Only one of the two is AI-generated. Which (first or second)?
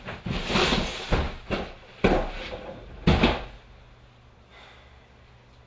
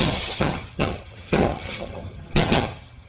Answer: second